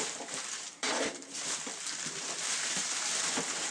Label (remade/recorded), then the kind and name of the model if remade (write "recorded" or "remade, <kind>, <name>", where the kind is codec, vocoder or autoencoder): remade, vocoder, BigVGAN v2